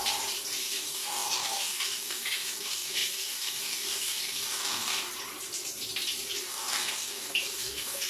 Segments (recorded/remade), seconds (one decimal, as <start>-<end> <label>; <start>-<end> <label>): 0.0-0.6 recorded; 0.6-5.1 remade; 5.1-6.4 recorded; 6.4-8.1 remade